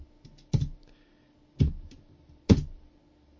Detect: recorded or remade recorded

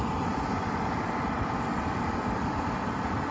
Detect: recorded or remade recorded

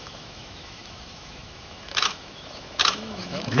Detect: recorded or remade remade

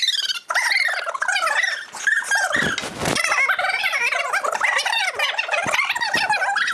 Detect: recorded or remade recorded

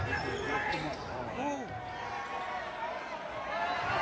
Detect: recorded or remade recorded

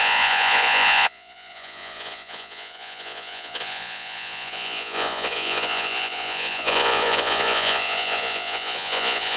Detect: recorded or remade remade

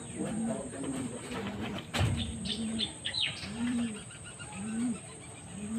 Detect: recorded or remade remade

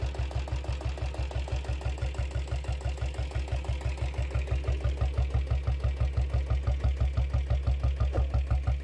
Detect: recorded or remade recorded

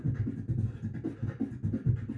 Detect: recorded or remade recorded